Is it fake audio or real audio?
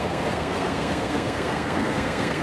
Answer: fake